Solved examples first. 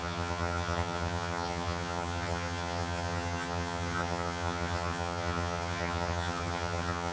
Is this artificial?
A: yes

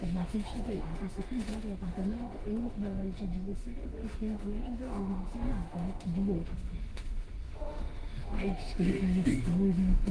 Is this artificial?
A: yes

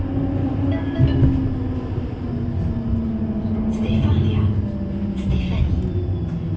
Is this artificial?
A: no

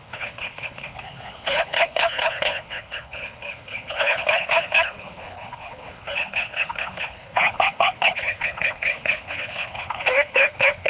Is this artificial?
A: yes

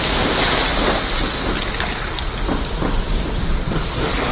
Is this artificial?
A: no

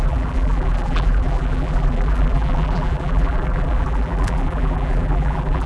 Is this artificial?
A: yes